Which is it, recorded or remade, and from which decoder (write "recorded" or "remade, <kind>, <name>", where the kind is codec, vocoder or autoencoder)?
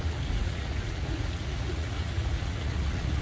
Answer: remade, vocoder, Vocos